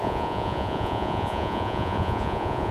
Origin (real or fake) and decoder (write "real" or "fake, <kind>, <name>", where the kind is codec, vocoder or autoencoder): fake, vocoder, Vocos